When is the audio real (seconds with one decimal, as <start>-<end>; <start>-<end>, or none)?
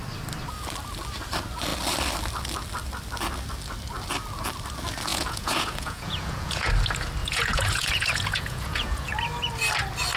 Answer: 0.0-5.1; 6.7-7.2; 9.1-10.2